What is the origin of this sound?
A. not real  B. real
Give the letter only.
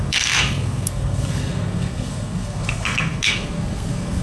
A